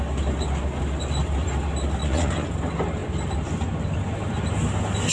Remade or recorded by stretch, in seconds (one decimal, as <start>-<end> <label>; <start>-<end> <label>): 0.0-2.0 recorded; 2.0-2.5 remade; 2.5-5.1 recorded